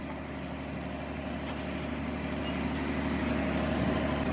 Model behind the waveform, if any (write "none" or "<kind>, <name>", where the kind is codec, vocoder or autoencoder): none